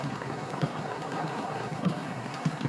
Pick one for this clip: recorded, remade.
remade